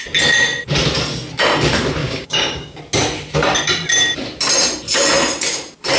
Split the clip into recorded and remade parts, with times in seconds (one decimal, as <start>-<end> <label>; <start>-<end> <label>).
0.0-2.0 recorded; 2.0-2.8 remade; 2.8-6.0 recorded